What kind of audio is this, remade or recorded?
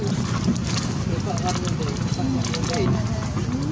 recorded